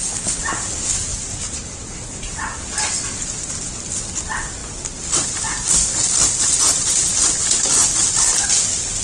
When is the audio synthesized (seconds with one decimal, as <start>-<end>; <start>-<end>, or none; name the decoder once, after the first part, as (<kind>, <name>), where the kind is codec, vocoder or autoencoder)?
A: 1.1-2.6 (vocoder, BigVGAN v2)